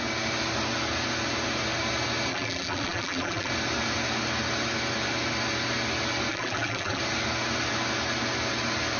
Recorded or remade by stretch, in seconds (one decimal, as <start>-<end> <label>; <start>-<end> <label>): 0.0-2.3 recorded; 2.3-3.5 remade; 3.5-6.3 recorded; 6.3-7.0 remade; 7.0-9.0 recorded